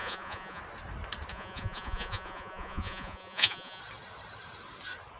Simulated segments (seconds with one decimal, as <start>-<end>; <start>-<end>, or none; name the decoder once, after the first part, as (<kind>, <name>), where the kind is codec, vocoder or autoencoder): 0.0-0.6 (vocoder, Vocos); 1.3-3.8